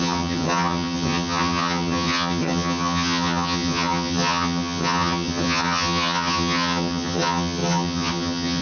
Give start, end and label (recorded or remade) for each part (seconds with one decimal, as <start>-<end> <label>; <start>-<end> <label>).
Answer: 0.0-8.6 remade